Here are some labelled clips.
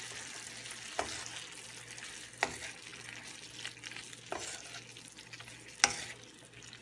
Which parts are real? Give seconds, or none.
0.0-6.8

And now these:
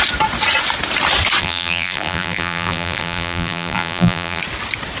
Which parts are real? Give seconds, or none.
0.0-1.4; 4.4-5.0